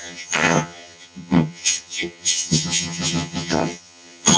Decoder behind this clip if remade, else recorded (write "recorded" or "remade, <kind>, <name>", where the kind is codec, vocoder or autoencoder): remade, vocoder, HiFi-GAN